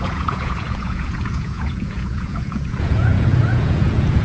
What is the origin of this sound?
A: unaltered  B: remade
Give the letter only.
B